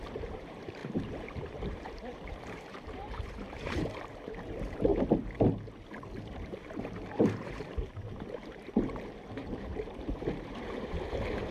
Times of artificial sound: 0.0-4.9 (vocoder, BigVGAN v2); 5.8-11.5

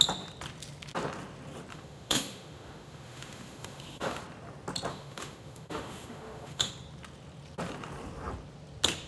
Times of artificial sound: 1.7-4.2 (autoencoder, DAC-VAE); 4.9-6.7

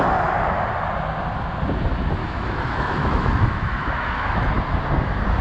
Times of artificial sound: 2.2-4.4 (autoencoder, DAC-VAE)